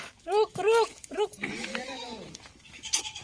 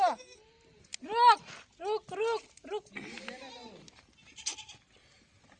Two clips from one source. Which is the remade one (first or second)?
first